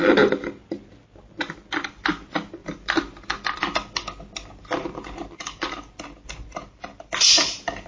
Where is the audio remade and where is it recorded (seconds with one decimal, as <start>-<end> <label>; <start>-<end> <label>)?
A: 0.0-2.6 recorded; 2.6-7.2 remade; 7.2-7.9 recorded